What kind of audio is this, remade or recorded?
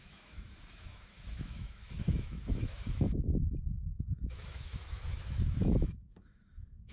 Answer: remade